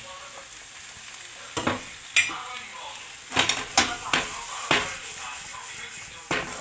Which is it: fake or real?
real